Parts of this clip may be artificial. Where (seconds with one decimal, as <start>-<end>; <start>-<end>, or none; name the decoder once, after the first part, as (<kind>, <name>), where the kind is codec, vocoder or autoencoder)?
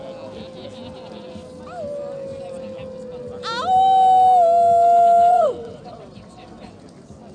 5.3-6.7 (vocoder, WaveNeXt)